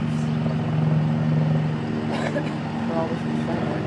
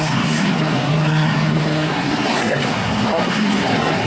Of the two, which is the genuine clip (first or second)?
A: first